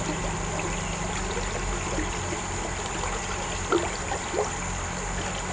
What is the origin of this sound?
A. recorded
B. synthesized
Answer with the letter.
A